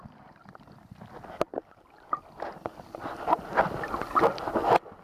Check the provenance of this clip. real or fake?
real